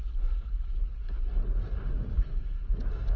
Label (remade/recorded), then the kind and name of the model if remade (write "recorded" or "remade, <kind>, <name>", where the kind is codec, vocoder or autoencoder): recorded